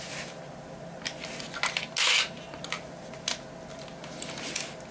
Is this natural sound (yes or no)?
yes